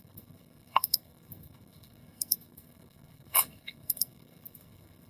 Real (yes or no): no